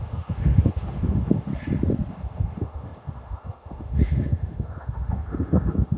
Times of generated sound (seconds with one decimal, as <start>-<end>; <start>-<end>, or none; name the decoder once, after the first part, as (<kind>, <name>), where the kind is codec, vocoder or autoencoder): 0.0-1.5 (autoencoder, DAC-VAE); 2.1-6.0